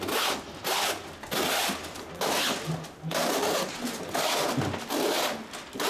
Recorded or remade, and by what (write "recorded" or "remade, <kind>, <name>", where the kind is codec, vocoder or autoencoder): recorded